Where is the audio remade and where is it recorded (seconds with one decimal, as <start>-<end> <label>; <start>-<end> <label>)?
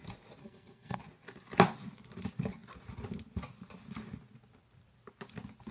0.0-0.4 recorded; 0.4-1.0 remade; 1.0-5.7 recorded